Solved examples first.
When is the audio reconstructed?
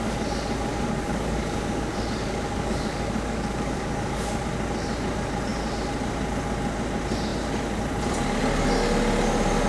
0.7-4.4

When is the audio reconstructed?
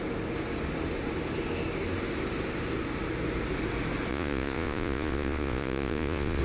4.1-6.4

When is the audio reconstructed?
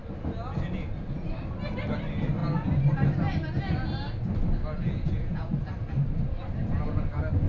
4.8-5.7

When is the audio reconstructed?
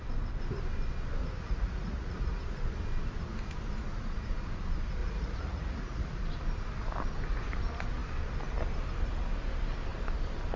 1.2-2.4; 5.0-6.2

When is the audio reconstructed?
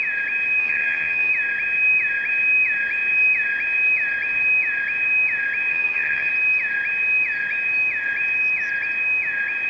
0.6-1.3; 5.7-6.3